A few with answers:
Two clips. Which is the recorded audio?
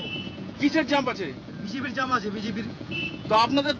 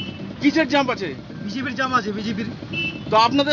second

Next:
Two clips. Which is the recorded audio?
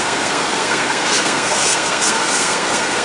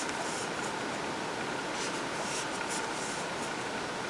second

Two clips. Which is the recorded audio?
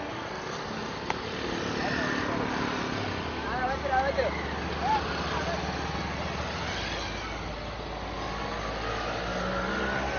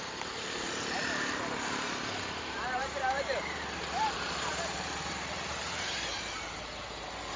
first